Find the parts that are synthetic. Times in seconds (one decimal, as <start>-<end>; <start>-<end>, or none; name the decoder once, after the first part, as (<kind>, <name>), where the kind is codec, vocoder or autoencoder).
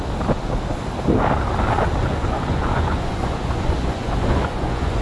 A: 2.0-5.0 (vocoder, Vocos)